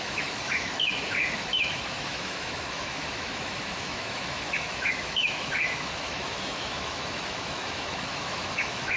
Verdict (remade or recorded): remade